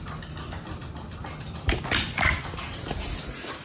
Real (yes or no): yes